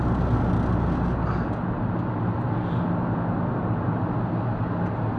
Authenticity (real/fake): real